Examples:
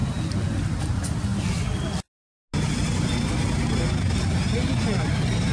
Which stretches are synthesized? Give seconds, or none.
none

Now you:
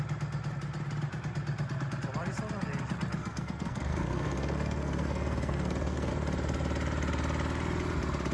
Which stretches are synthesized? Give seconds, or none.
3.2-6.1

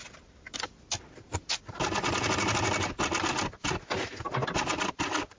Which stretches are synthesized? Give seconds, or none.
none

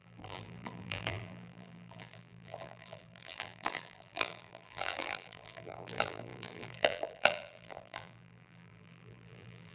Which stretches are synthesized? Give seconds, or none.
0.0-9.7

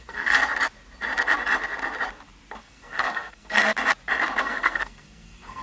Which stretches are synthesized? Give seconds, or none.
0.0-0.4; 2.6-3.6; 4.4-5.6

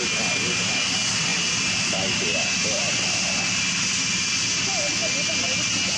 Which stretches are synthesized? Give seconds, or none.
0.0-5.0

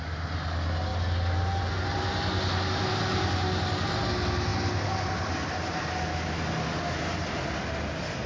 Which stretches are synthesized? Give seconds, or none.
none